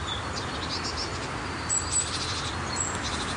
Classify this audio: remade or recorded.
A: recorded